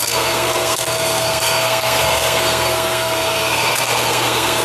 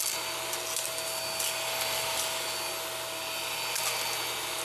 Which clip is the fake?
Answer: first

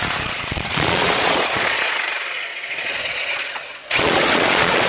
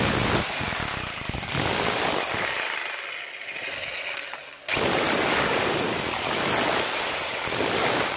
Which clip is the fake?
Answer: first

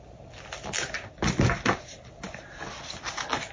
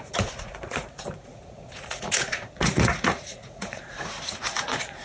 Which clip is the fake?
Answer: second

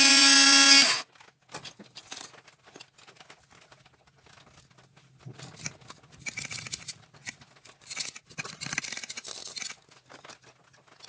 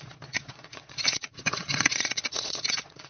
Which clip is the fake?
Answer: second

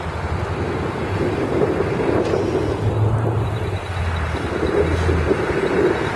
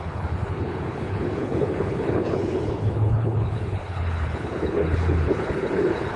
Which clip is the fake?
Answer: second